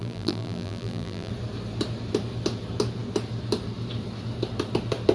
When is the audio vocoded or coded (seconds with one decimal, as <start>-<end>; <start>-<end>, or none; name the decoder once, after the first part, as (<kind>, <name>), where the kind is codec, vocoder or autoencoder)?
0.0-1.3 (vocoder, BigVGAN v2)

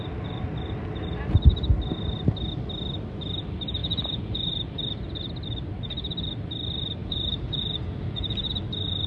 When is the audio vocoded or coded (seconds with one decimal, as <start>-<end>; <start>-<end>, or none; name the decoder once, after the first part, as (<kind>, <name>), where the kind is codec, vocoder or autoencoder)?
3.8-4.5 (vocoder, Vocos); 7.0-8.5

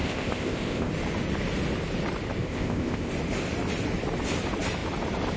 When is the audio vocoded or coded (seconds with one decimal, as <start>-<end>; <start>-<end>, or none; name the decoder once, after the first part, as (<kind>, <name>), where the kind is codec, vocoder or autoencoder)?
0.0-0.9 (codec, ZipCodec); 2.4-3.1

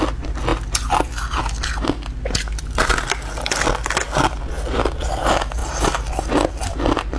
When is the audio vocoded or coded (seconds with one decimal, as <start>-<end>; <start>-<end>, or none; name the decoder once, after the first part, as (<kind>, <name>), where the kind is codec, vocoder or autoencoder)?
none

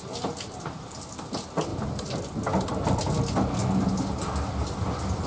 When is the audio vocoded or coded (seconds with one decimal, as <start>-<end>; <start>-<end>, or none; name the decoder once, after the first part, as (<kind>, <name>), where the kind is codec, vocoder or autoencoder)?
1.7-2.2 (vocoder, BigVGAN v2)

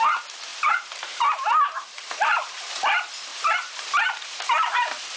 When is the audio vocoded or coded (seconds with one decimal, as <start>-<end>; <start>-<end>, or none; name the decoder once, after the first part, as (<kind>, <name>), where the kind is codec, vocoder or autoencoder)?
0.5-2.1 (vocoder, BigVGAN v2); 3.3-5.2

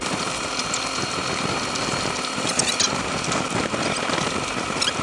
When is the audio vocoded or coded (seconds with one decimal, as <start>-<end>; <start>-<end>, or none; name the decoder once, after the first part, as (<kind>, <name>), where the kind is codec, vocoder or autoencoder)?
none

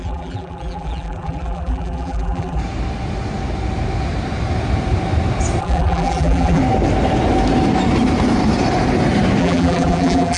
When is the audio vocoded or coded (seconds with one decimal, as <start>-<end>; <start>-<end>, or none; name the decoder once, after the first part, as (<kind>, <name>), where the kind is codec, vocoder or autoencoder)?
0.0-2.6 (vocoder, BigVGAN v2); 5.6-6.6; 9.4-10.4